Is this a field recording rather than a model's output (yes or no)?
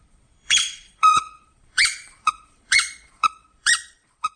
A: no